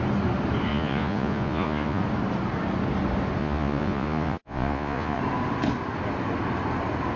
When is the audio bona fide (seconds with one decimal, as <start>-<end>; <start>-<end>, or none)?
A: 0.0-0.7; 2.0-3.4; 5.2-7.2